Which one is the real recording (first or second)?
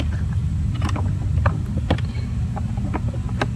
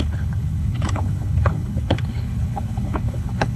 first